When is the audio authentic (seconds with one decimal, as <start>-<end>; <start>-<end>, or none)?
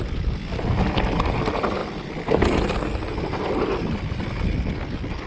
0.0-5.3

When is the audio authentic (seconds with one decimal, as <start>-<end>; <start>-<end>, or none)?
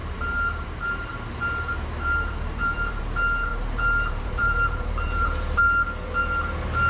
3.0-3.5; 5.6-6.9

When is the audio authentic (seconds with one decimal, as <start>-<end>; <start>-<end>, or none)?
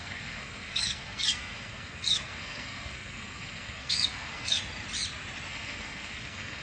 4.6-5.5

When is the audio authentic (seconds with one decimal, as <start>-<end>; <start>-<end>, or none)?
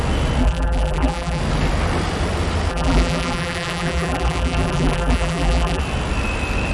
0.0-0.4; 1.4-2.7; 5.8-6.7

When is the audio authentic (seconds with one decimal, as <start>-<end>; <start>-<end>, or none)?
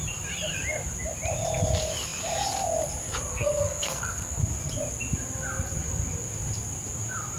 0.0-3.3; 4.4-7.4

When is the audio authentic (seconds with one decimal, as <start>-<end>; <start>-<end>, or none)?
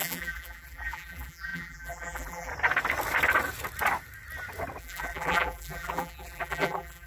2.5-4.8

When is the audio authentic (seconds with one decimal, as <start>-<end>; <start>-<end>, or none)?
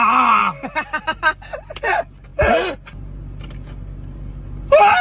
0.0-5.0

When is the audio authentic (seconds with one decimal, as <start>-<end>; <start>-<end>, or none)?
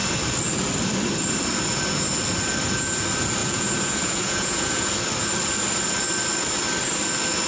0.0-3.4; 4.9-7.5